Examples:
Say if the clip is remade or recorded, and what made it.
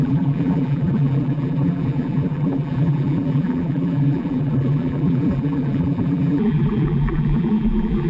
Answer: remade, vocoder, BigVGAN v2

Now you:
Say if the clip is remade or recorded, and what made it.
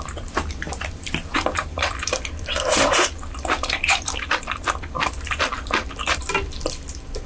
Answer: remade, vocoder, BigVGAN v2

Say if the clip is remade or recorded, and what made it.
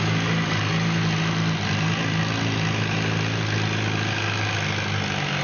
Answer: recorded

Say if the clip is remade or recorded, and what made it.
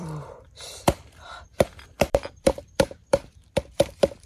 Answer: remade, vocoder, BigVGAN v2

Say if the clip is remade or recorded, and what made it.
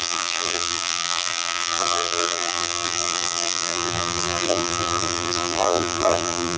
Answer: remade, vocoder, BigVGAN v2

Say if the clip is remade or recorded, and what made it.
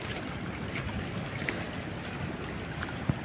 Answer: recorded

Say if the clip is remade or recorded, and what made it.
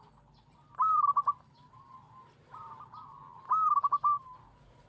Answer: recorded